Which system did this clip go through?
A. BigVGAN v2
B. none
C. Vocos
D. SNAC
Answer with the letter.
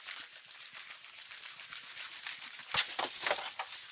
B